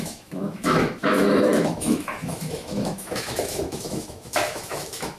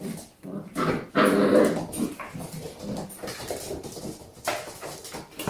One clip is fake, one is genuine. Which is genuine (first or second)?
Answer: second